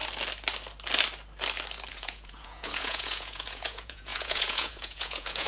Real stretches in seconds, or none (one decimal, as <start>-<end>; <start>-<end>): 0.0-1.9